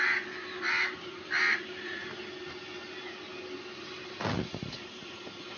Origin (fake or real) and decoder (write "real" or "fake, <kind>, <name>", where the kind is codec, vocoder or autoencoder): real